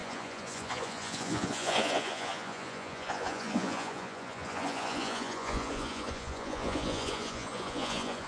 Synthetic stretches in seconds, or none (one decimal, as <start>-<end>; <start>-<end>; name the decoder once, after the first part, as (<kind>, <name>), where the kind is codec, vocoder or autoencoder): 0.0-8.3 (vocoder, Vocos)